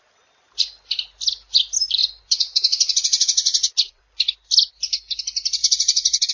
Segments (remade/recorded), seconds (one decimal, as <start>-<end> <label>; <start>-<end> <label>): 0.0-2.0 recorded; 2.0-4.0 remade; 4.0-5.6 recorded; 5.6-6.3 remade